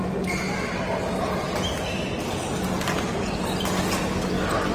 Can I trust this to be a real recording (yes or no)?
yes